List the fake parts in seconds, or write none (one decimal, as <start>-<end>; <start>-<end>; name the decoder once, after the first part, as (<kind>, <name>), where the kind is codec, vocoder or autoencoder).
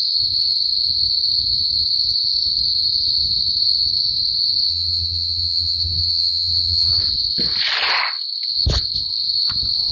4.7-7.0 (vocoder, HiFi-GAN)